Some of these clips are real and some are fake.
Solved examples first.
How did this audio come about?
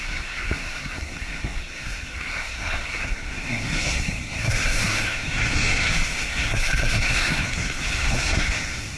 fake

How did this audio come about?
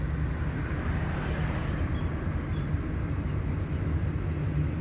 real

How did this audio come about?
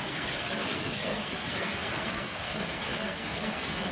fake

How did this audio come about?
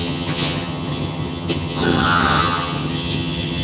fake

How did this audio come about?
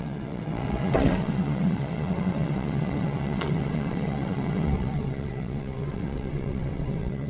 fake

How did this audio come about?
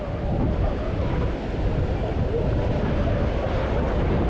real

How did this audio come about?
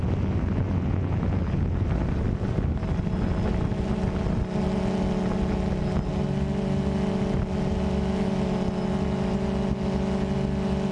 real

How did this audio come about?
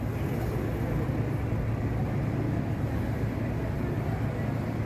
real